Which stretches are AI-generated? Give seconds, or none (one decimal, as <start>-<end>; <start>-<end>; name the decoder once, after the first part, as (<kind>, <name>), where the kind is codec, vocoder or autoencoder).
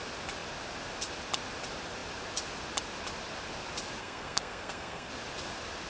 4.0-5.1 (codec, SNAC)